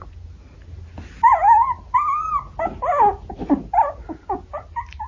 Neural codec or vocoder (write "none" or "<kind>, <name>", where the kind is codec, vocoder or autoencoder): none